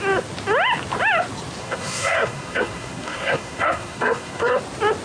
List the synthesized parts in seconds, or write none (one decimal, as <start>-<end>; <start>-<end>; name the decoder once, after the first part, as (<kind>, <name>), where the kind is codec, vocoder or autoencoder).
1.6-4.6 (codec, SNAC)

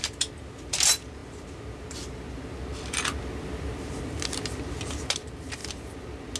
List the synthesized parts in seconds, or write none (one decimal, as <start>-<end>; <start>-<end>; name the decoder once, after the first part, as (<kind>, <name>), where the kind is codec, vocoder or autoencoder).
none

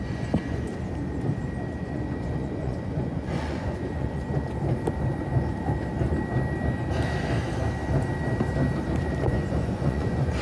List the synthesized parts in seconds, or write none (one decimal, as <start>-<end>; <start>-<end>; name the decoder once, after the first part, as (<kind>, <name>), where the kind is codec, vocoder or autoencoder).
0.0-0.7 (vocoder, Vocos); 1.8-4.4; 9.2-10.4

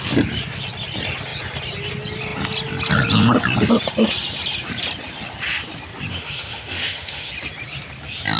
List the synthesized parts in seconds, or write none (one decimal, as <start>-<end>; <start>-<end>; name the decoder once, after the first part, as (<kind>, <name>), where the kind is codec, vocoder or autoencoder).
6.1-7.3 (autoencoder, DAC-VAE)

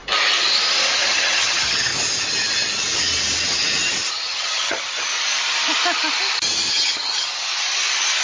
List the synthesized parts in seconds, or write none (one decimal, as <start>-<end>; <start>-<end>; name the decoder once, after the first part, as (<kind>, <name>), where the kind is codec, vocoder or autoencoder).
0.9-1.9 (vocoder, HiFi-GAN); 4.1-5.1; 6.7-7.5

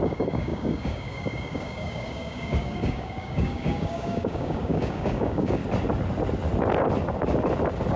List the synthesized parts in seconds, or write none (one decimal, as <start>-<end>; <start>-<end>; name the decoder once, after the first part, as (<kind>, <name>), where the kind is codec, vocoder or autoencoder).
0.0-5.6 (codec, DAC)

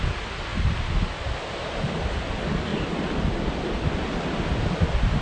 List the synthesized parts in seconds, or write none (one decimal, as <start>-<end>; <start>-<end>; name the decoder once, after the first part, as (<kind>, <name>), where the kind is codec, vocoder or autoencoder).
2.7-4.1 (vocoder, BigVGAN v2)